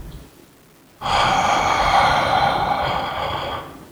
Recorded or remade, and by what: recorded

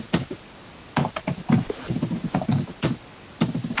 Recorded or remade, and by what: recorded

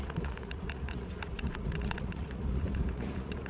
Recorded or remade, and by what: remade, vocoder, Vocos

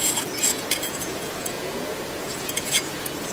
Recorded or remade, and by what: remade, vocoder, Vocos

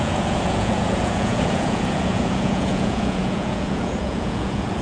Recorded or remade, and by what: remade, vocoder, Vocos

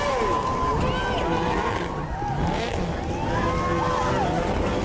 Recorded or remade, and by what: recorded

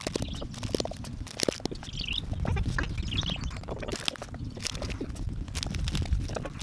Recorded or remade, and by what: recorded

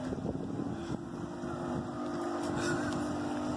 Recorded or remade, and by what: recorded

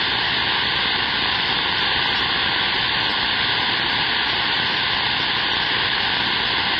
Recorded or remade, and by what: recorded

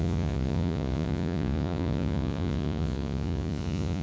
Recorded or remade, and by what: remade, vocoder, Vocos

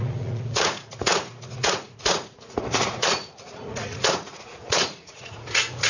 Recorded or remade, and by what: remade, vocoder, Vocos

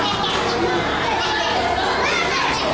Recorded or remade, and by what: recorded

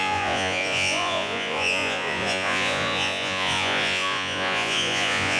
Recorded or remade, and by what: remade, vocoder, Vocos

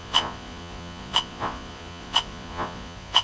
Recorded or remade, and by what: remade, vocoder, Vocos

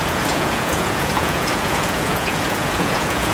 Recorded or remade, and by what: remade, vocoder, Vocos